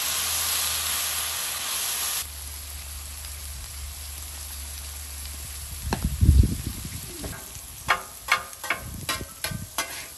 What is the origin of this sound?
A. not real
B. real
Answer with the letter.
B